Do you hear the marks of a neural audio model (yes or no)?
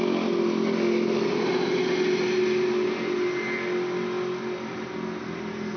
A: no